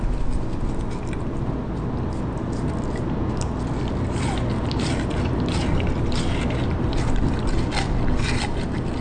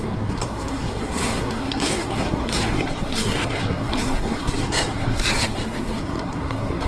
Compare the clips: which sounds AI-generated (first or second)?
second